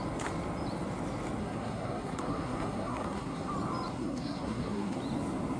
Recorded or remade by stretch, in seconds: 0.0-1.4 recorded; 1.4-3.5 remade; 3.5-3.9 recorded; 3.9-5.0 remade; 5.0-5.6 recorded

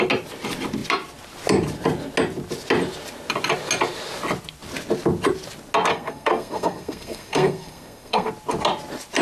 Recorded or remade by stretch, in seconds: 0.0-5.9 recorded; 5.9-8.3 remade; 8.3-9.2 recorded